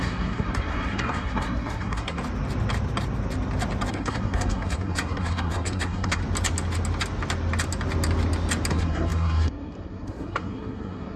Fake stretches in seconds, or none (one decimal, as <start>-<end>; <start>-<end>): 0.0-2.2; 3.9-6.2; 8.7-11.2